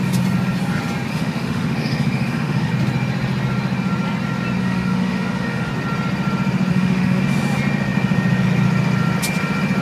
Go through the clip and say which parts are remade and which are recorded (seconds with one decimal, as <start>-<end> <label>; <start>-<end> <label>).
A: 0.0-1.1 recorded; 1.1-2.7 remade; 2.7-4.6 recorded; 4.6-5.7 remade; 5.7-6.7 recorded; 6.7-7.2 remade; 7.2-9.8 recorded